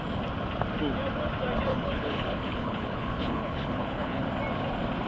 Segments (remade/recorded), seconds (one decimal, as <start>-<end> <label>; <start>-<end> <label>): 0.0-1.7 recorded; 1.7-4.2 remade; 4.2-5.1 recorded